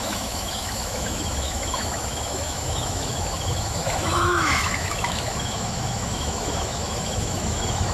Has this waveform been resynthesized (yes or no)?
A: yes